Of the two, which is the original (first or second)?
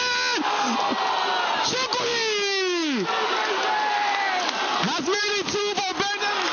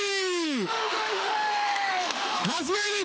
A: first